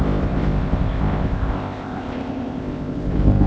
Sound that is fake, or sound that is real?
fake